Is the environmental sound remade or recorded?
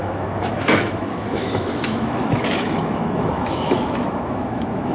remade